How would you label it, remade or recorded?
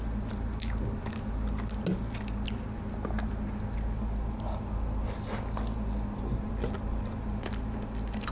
recorded